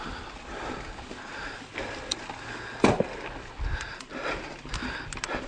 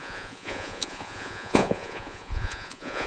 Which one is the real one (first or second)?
first